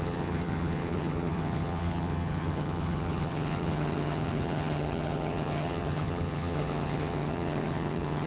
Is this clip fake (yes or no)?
yes